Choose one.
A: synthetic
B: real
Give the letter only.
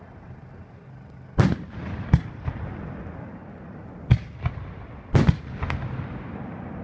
B